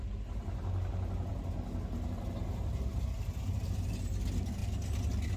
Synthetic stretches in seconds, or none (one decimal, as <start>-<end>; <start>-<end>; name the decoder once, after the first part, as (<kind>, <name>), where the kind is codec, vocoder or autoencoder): none